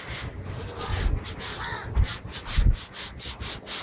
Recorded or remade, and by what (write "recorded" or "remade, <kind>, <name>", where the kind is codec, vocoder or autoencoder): recorded